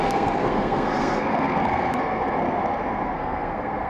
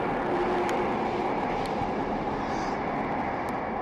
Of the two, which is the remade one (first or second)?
first